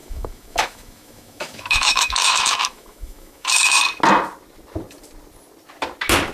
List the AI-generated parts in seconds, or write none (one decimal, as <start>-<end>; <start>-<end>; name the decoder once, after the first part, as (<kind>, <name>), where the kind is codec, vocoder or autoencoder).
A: 0.0-3.8 (autoencoder, DAC-VAE)